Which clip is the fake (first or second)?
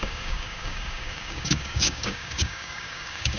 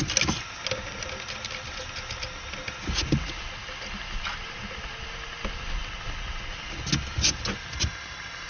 first